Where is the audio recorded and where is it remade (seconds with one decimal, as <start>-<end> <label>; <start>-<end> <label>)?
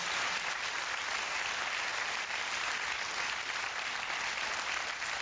0.0-5.2 recorded